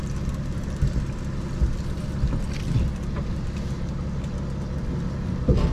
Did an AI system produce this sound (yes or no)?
no